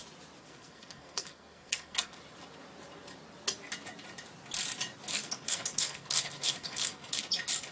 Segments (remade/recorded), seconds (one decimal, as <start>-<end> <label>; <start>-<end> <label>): 0.0-0.4 recorded; 0.4-2.2 remade; 2.2-5.1 recorded; 5.1-7.2 remade; 7.2-7.7 recorded